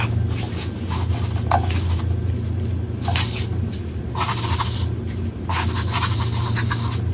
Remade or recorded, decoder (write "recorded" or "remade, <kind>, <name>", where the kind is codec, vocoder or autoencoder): recorded